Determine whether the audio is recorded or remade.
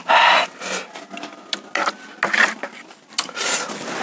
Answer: recorded